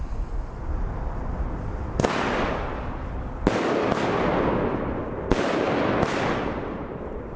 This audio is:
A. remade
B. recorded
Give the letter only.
B